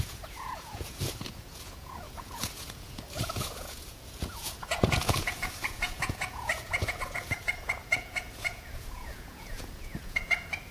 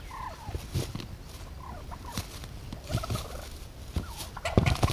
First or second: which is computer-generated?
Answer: first